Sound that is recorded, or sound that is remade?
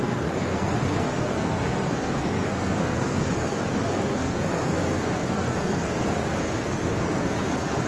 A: remade